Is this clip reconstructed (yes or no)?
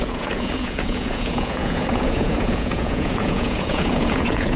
yes